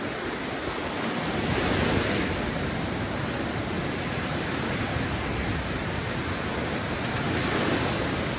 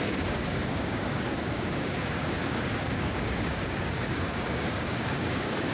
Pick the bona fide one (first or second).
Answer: first